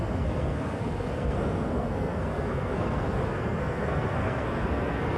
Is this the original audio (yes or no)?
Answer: no